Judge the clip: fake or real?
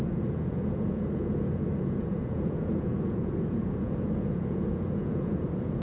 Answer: fake